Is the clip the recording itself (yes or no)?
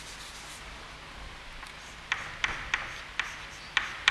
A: yes